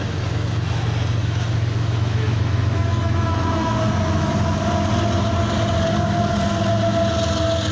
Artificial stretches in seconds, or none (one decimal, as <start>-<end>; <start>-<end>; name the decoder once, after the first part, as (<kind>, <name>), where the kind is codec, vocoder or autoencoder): 1.2-4.3 (autoencoder, DAC-VAE)